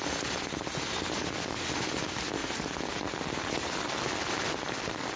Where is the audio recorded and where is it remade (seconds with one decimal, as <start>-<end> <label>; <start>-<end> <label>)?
0.0-5.2 recorded